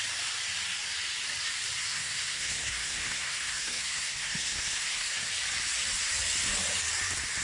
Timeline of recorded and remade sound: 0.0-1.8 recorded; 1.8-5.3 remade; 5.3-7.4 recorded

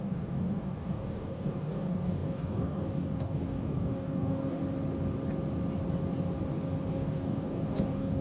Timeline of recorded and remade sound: 0.0-4.6 remade; 4.6-6.9 recorded; 6.9-8.2 remade

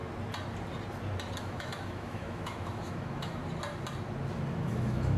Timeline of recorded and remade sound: 0.0-1.4 recorded; 1.4-3.4 remade; 3.4-4.5 recorded; 4.5-5.2 remade

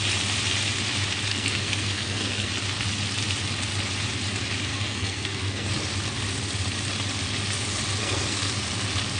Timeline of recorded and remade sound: 0.0-1.3 recorded; 1.3-2.5 remade; 2.5-4.7 recorded; 4.7-5.7 remade; 5.7-8.0 recorded; 8.0-8.5 remade; 8.5-9.2 recorded

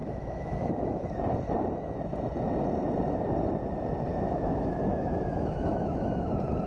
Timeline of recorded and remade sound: 0.0-1.2 remade; 1.2-4.1 recorded; 4.1-6.3 remade; 6.3-6.7 recorded

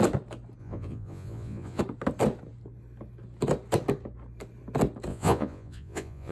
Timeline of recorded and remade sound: 0.0-0.6 recorded; 0.6-1.8 remade; 1.8-5.1 recorded; 5.1-6.3 remade